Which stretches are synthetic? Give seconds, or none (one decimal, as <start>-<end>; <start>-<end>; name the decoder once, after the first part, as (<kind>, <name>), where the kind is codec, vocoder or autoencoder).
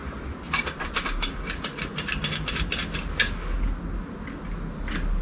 none